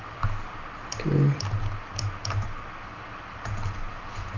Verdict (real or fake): real